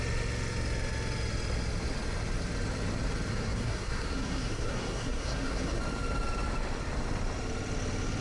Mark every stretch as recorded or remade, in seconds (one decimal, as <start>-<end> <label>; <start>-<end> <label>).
0.0-3.3 recorded; 3.3-5.8 remade; 5.8-8.2 recorded